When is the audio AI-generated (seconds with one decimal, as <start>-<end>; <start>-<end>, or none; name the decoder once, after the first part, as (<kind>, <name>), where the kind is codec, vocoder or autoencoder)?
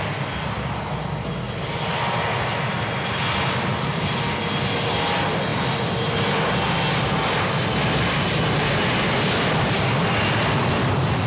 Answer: none